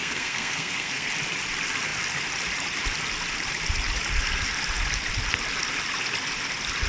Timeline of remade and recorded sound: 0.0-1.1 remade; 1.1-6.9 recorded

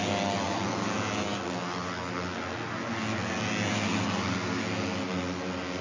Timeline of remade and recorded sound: 0.0-5.8 recorded

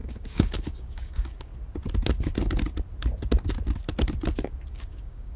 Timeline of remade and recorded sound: 0.0-1.5 remade; 1.5-4.7 recorded; 4.7-5.4 remade

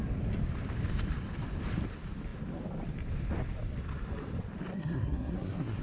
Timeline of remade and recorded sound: 0.0-4.7 recorded; 4.7-5.8 remade

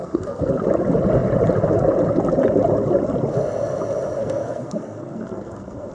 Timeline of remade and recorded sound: 0.0-0.5 remade; 0.5-4.2 recorded; 4.2-5.9 remade

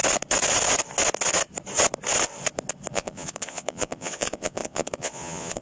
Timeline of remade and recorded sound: 0.0-2.9 recorded; 2.9-5.6 remade

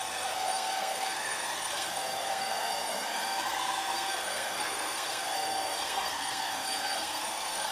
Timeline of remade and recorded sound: 0.0-7.7 remade